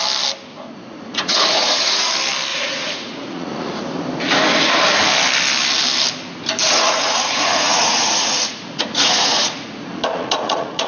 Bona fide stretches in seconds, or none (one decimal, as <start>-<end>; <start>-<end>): 0.0-0.5; 2.1-2.5; 3.8-6.6